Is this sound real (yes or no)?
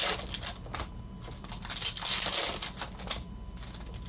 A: yes